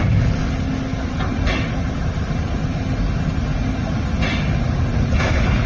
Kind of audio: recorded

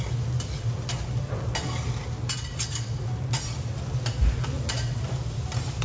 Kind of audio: recorded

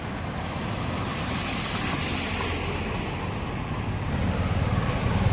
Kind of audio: recorded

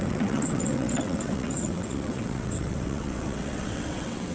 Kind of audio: remade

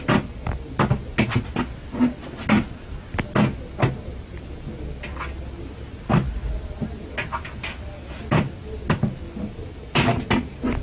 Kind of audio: recorded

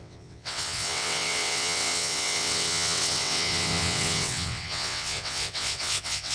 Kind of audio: remade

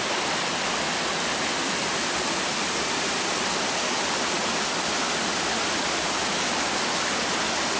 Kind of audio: recorded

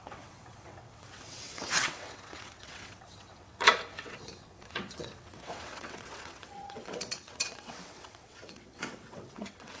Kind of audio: remade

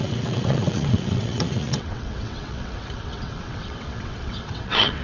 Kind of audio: remade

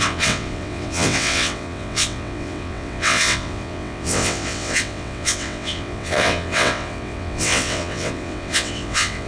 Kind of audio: remade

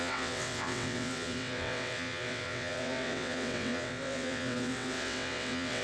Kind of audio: remade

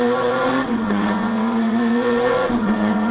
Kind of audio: remade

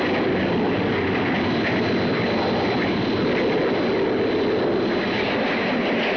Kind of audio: recorded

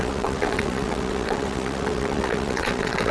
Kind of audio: remade